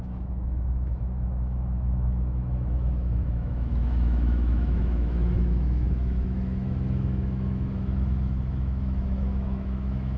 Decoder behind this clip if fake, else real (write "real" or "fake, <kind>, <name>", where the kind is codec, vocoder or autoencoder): fake, autoencoder, DAC-VAE